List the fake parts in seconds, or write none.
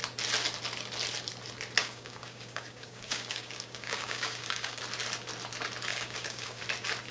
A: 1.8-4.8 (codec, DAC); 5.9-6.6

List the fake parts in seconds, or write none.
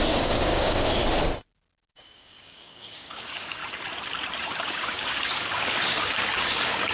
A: 0.0-1.0 (codec, DAC); 1.9-3.6; 4.5-6.9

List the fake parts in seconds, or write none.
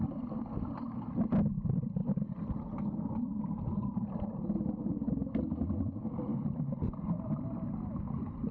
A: none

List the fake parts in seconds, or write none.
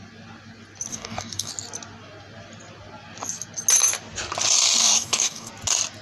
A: 0.9-1.5 (codec, DAC); 4.8-5.5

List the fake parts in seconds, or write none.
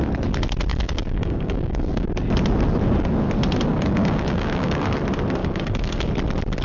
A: 0.7-2.1 (codec, DAC); 3.7-4.8; 5.4-6.1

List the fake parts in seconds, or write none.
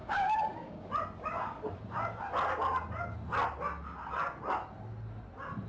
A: 0.0-0.9 (codec, DAC)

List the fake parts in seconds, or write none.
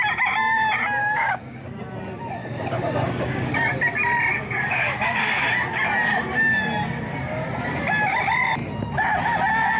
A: 1.0-1.8 (codec, DAC); 2.4-3.5; 4.3-5.4